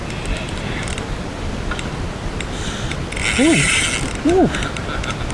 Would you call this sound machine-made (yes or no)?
no